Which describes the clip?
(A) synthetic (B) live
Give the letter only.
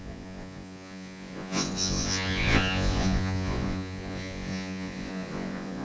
A